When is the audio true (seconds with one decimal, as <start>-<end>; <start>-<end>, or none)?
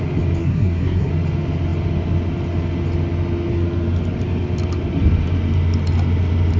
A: 0.0-0.4; 1.1-6.6